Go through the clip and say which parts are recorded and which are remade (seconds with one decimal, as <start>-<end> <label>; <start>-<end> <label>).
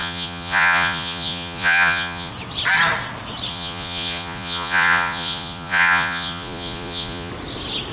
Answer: 0.0-2.3 remade; 2.3-3.5 recorded; 3.5-7.3 remade; 7.3-7.9 recorded